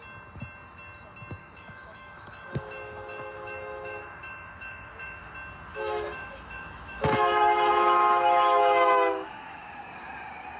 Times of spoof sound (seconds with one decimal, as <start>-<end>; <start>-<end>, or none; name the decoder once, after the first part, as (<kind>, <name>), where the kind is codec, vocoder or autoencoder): 1.4-5.3 (autoencoder, DAC-VAE); 5.7-9.7